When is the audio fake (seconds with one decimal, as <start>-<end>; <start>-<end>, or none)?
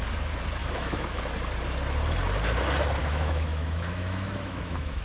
0.6-1.2; 3.0-5.0